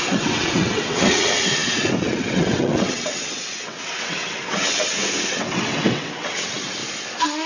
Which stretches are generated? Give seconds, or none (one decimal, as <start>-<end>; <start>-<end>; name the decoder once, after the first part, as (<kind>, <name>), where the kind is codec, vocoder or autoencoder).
0.0-6.8 (vocoder, WaveNeXt)